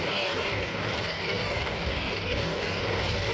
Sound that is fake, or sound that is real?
fake